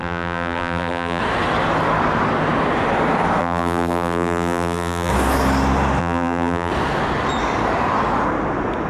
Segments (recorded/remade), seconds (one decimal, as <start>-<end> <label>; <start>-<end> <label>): 0.0-1.2 remade; 1.2-3.4 recorded; 3.4-5.1 remade; 5.1-6.0 recorded; 6.0-6.7 remade; 6.7-8.9 recorded